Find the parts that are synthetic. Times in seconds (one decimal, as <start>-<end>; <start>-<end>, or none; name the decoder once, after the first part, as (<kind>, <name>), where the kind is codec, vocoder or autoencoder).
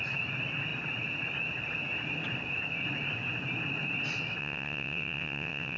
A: 4.4-5.8 (vocoder, WaveNeXt)